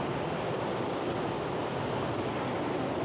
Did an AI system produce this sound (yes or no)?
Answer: no